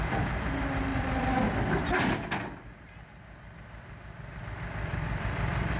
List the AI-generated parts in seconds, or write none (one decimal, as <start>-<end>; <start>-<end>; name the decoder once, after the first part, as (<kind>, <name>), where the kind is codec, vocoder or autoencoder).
none